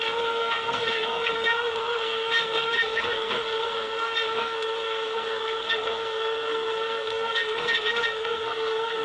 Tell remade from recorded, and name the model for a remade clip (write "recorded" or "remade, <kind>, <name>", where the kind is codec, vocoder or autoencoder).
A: remade, codec, SNAC